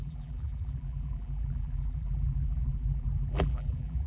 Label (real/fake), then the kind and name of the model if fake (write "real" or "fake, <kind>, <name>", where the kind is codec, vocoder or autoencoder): fake, vocoder, BigVGAN v2